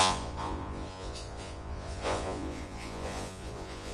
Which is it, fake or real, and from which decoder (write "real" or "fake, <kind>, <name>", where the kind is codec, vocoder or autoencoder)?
fake, vocoder, Vocos